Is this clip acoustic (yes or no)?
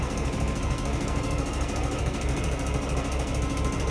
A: no